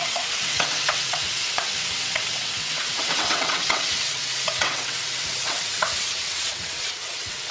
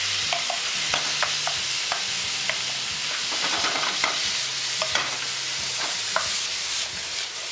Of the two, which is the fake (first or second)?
first